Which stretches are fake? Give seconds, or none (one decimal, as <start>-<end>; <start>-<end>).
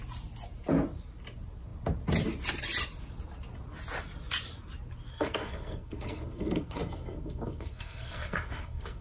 5.1-9.0